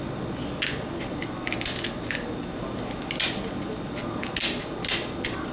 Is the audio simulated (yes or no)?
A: no